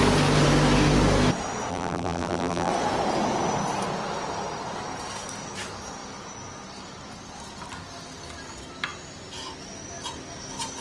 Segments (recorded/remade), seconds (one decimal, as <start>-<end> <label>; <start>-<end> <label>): 0.0-1.7 recorded; 1.7-2.7 remade; 2.7-10.8 recorded